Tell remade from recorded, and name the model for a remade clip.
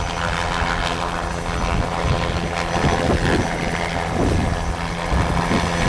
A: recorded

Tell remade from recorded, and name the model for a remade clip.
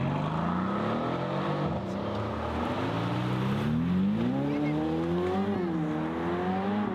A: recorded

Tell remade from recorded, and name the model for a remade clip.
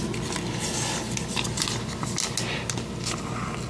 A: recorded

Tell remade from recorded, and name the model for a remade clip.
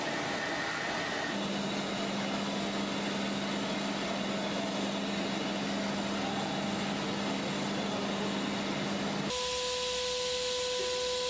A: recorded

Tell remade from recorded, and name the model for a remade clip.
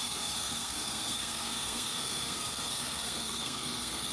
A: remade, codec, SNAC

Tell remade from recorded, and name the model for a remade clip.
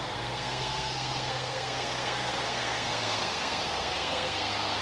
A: remade, codec, SNAC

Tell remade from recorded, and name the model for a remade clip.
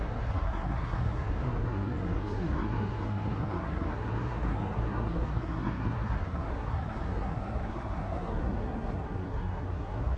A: remade, codec, SNAC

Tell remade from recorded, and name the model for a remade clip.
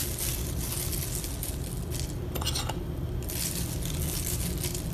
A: recorded